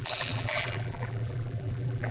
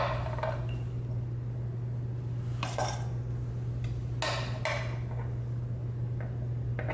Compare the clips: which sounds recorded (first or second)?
second